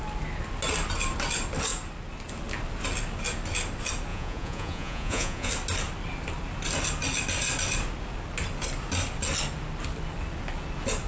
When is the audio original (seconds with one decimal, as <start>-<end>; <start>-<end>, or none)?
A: 0.0-4.1; 5.5-11.1